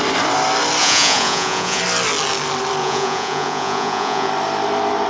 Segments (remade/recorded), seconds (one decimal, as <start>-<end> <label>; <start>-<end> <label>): 0.0-0.8 recorded; 0.8-1.8 remade; 1.8-2.8 recorded; 2.8-4.3 remade; 4.3-5.1 recorded